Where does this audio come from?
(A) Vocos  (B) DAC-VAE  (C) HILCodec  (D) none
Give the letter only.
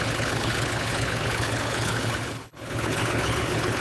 C